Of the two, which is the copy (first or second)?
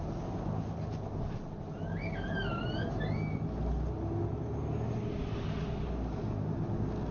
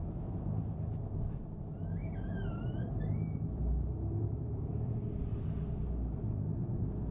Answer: second